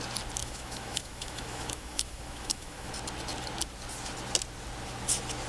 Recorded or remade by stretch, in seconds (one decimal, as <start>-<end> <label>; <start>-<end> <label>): 0.0-0.4 recorded; 0.4-2.9 remade; 2.9-5.5 recorded